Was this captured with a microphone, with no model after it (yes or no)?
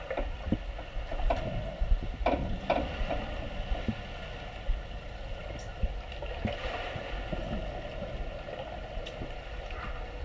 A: yes